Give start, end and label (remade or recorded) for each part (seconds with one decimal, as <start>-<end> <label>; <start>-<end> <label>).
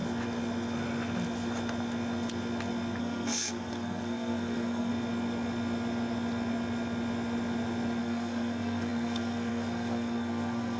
0.0-3.0 recorded; 3.0-4.9 remade; 4.9-8.0 recorded; 8.0-10.8 remade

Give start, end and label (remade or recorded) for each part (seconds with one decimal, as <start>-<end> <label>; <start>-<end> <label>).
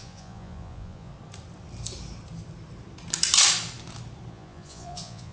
0.0-1.1 remade; 1.1-4.3 recorded; 4.3-5.3 remade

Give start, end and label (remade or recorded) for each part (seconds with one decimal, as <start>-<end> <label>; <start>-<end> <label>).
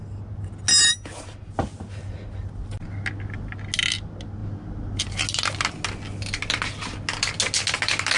0.0-8.2 recorded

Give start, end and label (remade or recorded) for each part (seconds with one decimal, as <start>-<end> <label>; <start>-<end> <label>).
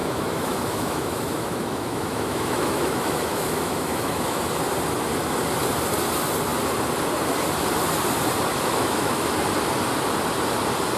0.0-4.5 remade; 4.5-8.5 recorded; 8.5-9.3 remade; 9.3-11.0 recorded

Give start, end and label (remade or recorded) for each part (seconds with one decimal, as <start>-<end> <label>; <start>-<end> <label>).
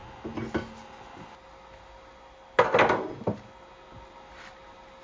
0.0-5.0 recorded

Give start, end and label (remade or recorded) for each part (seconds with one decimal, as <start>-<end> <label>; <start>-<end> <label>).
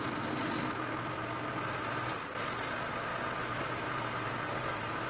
0.0-5.1 recorded